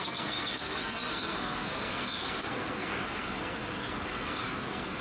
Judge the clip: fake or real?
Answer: fake